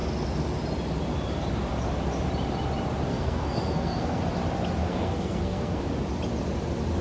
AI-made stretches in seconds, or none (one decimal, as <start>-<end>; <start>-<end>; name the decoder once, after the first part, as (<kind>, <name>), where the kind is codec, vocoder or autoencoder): 3.1-4.2 (codec, SNAC); 4.8-5.8